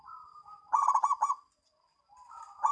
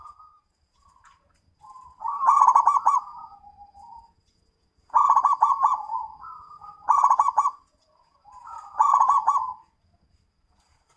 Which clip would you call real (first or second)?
first